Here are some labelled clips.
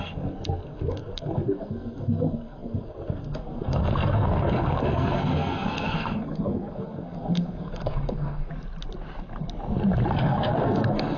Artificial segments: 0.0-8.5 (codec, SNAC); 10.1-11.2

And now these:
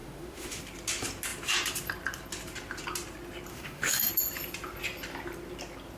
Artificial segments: 0.0-0.6 (autoencoder, DAC-VAE); 3.5-4.1

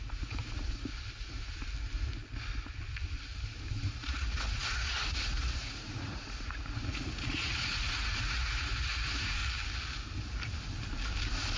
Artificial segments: 0.0-0.9 (vocoder, Vocos); 3.7-9.4